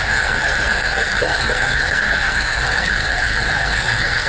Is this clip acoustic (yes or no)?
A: no